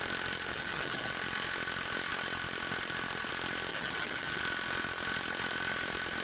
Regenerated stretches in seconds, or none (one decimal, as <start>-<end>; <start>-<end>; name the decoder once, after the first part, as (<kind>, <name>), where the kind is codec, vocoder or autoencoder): 0.5-1.1 (vocoder, HiFi-GAN); 3.7-4.4